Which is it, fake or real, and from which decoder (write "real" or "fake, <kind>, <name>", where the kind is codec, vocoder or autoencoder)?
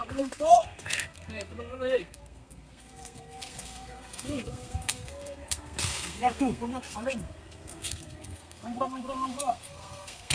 fake, codec, SNAC